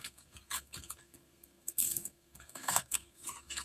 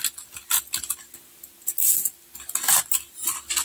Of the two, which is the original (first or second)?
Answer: second